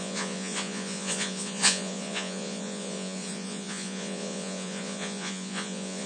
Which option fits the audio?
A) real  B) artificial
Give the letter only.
B